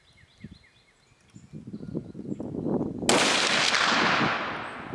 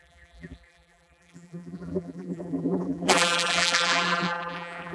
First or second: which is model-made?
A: second